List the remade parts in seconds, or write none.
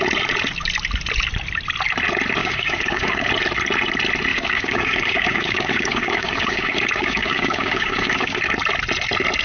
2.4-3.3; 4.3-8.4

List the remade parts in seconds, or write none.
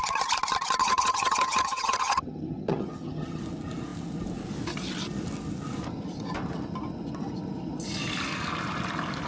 0.8-3.4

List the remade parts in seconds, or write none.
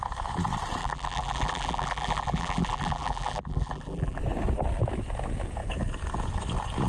0.8-4.2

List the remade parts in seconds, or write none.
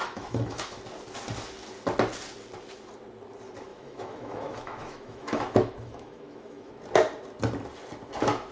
0.0-0.8; 3.7-6.7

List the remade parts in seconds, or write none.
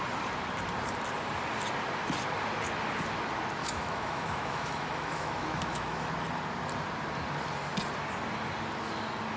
3.6-6.1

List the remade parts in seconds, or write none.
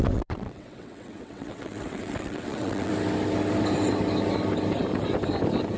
0.0-2.9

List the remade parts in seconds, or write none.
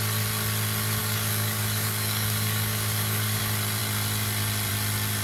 1.0-3.4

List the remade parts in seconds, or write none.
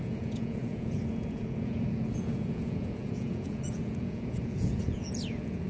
0.0-5.7